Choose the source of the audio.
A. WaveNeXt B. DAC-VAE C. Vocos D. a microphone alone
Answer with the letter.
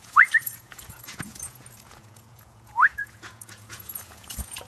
C